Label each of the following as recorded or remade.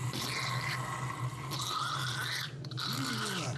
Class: recorded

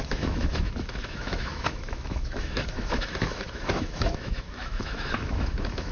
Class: remade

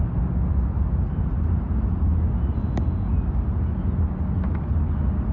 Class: recorded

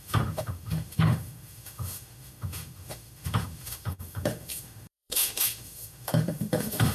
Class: remade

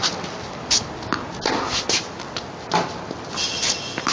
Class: recorded